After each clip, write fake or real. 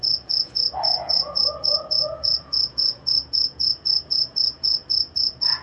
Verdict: fake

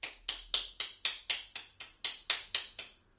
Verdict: real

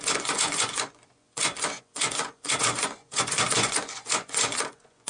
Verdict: fake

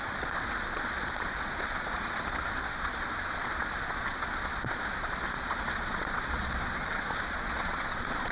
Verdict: fake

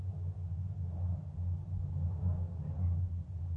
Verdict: real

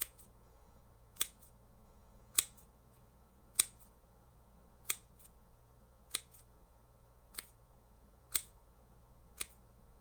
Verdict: fake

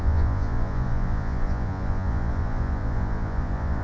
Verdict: fake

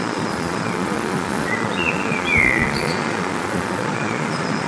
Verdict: fake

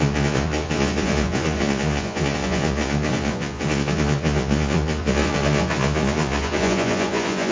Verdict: fake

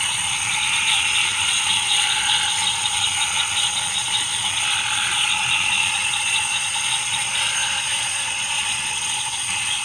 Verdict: fake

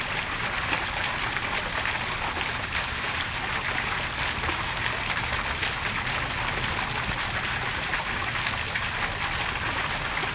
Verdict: real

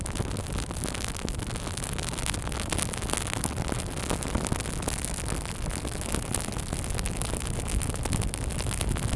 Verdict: real